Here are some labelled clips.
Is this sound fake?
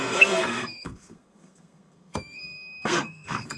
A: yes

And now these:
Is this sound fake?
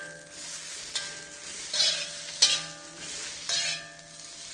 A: no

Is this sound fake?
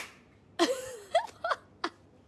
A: no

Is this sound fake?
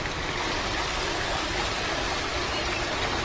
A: no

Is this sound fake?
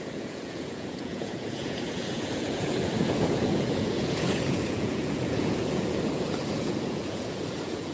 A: yes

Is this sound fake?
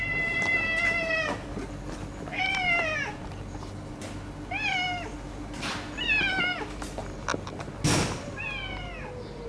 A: no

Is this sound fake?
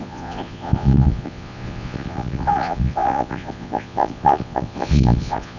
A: yes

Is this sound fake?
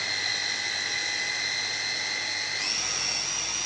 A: no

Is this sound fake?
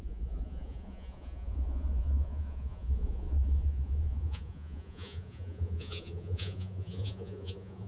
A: yes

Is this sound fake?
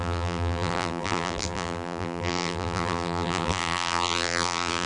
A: yes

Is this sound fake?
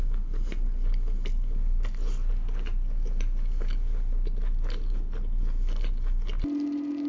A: no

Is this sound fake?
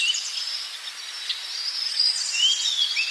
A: no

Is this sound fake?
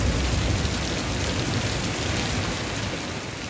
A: no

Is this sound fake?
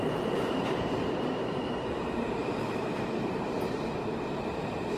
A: yes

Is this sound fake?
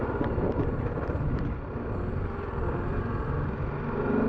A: no